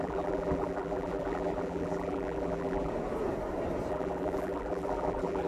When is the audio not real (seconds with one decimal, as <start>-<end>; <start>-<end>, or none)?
0.0-2.9; 3.9-5.5